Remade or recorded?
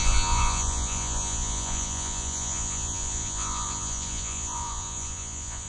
remade